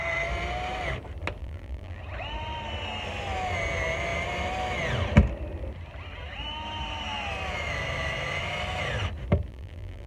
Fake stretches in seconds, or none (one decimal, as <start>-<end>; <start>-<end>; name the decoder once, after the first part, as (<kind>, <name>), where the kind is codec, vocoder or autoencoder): 1.4-2.0 (vocoder, BigVGAN v2); 9.5-10.1